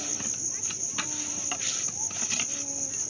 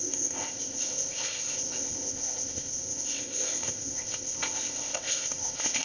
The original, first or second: first